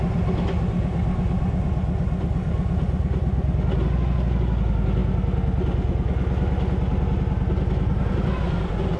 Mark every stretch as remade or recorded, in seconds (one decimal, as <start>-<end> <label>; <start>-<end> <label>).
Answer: 0.0-9.0 recorded